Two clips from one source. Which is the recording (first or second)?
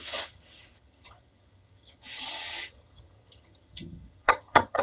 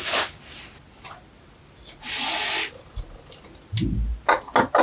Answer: second